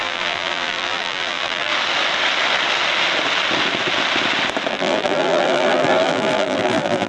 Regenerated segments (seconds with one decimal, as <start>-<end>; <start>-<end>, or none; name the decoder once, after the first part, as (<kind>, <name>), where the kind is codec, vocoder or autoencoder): 0.0-1.7 (vocoder, BigVGAN v2); 4.7-7.1